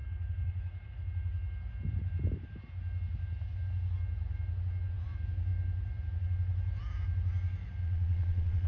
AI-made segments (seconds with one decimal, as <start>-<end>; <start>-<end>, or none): 7.8-8.7